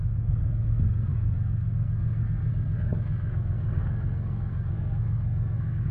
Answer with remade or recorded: remade